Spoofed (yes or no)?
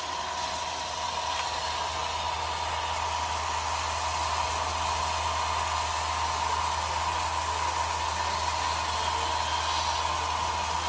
no